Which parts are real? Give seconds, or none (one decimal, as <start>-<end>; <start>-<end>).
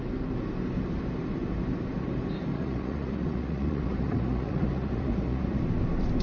0.0-2.5; 5.6-6.2